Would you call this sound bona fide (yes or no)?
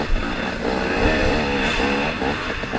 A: yes